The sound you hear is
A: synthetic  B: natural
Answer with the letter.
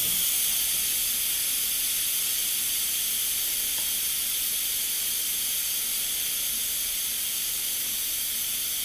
B